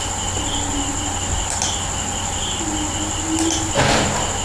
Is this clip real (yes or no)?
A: yes